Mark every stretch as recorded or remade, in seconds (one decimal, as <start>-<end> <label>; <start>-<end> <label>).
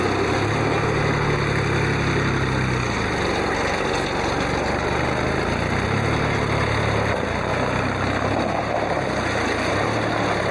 0.0-10.5 recorded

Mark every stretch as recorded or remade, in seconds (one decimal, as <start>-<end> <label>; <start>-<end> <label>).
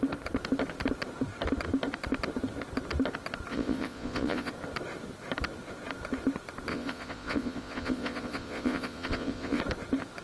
0.0-3.5 recorded; 3.5-4.5 remade; 4.5-6.7 recorded; 6.7-9.6 remade; 9.6-10.2 recorded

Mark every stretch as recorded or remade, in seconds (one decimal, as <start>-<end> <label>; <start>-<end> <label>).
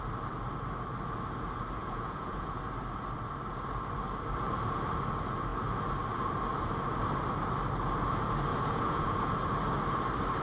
0.0-1.8 recorded; 1.8-2.6 remade; 2.6-8.5 recorded; 8.5-9.3 remade; 9.3-10.4 recorded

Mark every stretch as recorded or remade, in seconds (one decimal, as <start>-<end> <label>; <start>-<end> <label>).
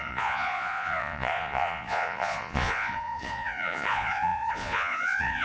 0.0-5.4 remade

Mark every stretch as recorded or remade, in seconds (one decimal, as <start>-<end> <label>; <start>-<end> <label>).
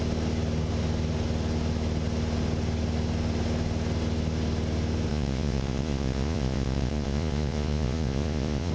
0.0-5.1 recorded; 5.1-8.7 remade